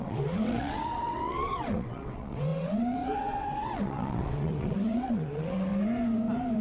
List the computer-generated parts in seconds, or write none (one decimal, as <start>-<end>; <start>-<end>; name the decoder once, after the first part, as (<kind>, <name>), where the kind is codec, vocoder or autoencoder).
0.0-5.7 (vocoder, WaveNeXt)